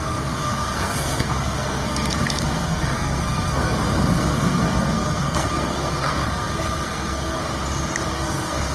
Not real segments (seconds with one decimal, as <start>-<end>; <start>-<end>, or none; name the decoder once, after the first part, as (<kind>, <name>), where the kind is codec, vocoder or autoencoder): 0.0-7.4 (codec, SNAC); 8.1-8.7